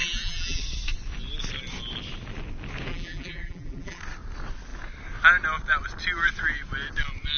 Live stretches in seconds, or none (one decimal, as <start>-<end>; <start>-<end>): 0.6-2.9; 4.0-7.4